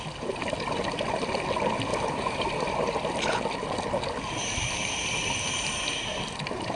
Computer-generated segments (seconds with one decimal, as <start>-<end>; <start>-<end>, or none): none